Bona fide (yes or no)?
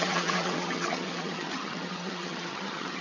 no